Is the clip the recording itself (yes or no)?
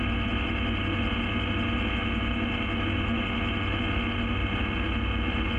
yes